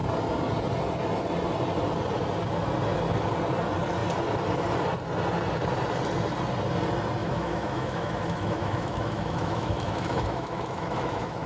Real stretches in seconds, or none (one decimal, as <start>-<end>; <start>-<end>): 0.0-7.2